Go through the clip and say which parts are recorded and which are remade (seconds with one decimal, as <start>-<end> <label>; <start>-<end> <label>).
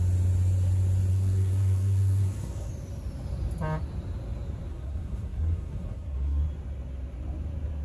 0.0-1.1 recorded; 1.1-2.7 remade; 2.7-4.7 recorded; 4.7-6.4 remade; 6.4-7.8 recorded